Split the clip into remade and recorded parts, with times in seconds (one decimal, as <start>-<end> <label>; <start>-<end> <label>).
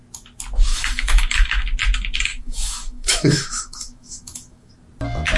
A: 0.0-0.7 recorded; 0.7-1.6 remade; 1.6-2.3 recorded; 2.3-4.7 remade; 4.7-5.4 recorded